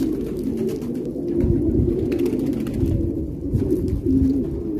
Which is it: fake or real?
real